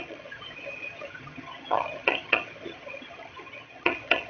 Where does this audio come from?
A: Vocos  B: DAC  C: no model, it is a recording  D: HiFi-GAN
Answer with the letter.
D